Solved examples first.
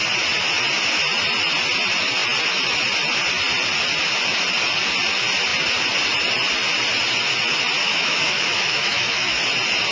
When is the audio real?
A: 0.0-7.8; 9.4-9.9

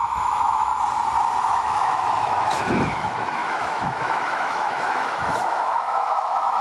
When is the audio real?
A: 0.7-1.4

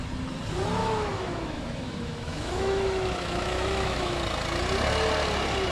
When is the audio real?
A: 0.0-0.8; 4.2-5.7

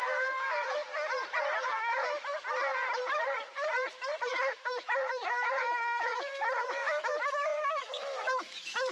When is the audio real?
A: 0.8-1.7; 2.3-4.3

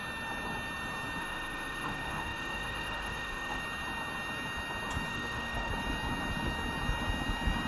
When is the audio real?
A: 0.0-1.2; 3.6-5.1; 5.7-7.7

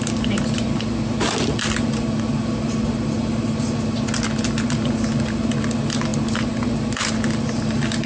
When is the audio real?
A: 0.0-8.1